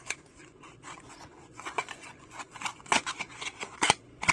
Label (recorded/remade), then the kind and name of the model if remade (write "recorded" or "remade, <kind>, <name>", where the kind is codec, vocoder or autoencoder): remade, vocoder, Vocos